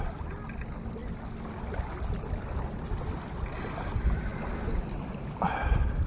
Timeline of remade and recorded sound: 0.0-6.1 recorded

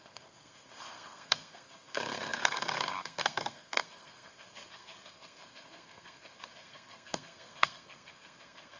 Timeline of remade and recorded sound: 0.0-8.8 remade

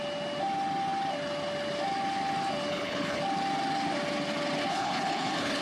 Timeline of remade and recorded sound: 0.0-2.7 recorded; 2.7-3.2 remade; 3.2-4.7 recorded; 4.7-5.6 remade

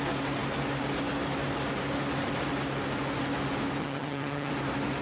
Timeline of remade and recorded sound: 0.0-3.8 recorded; 3.8-4.5 remade; 4.5-5.0 recorded

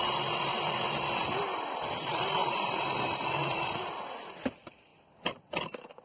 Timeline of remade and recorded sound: 0.0-0.5 recorded; 0.5-1.4 remade; 1.4-2.4 recorded; 2.4-3.7 remade; 3.7-6.0 recorded

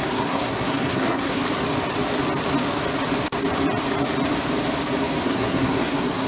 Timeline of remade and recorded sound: 0.0-1.4 remade; 1.4-5.2 recorded; 5.2-6.3 remade

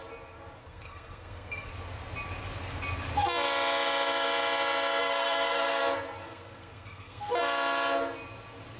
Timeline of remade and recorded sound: 0.0-0.6 recorded; 0.6-1.7 remade; 1.7-5.0 recorded; 5.0-5.8 remade; 5.8-6.2 recorded; 6.2-7.4 remade; 7.4-8.8 recorded

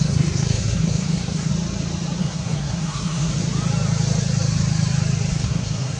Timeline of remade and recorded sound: 0.0-1.5 remade; 1.5-2.2 recorded; 2.2-3.3 remade; 3.3-5.3 recorded; 5.3-6.0 remade